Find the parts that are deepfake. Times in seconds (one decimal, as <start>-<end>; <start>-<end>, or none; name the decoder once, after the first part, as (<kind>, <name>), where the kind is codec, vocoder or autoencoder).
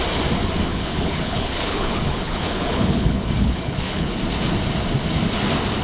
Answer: 0.7-4.2 (codec, HILCodec)